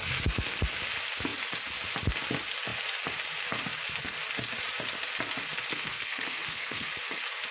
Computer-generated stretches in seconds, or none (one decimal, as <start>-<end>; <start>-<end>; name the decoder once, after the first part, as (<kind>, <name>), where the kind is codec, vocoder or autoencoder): 5.7-6.9 (codec, SNAC)